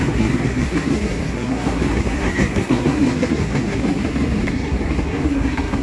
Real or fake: fake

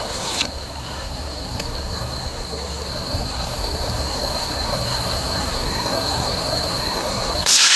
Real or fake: fake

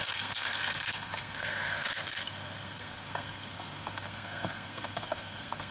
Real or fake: fake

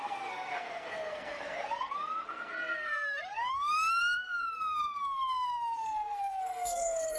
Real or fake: fake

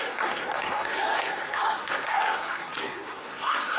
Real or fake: fake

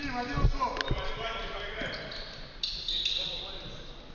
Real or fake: real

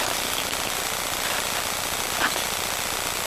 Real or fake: real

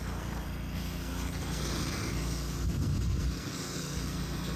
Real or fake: fake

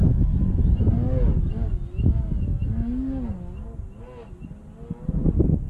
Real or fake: real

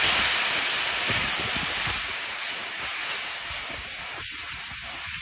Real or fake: real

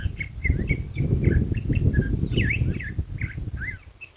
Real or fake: real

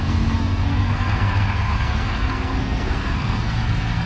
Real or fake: fake